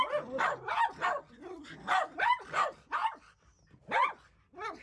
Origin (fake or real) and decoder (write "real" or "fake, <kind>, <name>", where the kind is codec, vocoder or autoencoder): real